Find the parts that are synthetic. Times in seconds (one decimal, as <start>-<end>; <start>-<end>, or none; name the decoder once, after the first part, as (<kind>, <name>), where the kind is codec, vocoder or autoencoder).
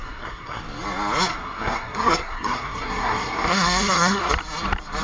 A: 0.0-0.6 (codec, SNAC); 1.3-4.3